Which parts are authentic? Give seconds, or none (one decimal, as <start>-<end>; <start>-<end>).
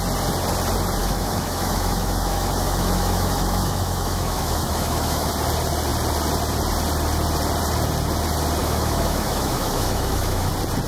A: 0.0-1.0; 5.3-8.6; 10.5-10.9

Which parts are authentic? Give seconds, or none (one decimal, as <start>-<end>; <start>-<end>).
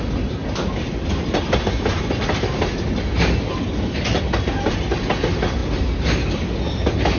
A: 0.0-7.2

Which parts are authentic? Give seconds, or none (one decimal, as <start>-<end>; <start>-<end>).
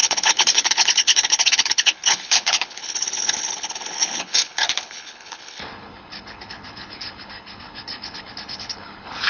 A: none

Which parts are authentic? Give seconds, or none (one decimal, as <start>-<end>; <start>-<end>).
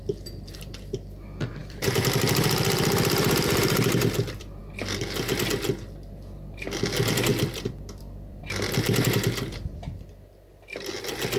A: 0.0-1.6; 4.6-7.3; 8.4-11.4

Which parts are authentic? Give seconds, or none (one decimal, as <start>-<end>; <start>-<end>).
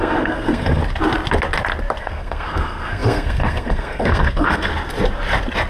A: 0.8-2.0; 4.7-5.7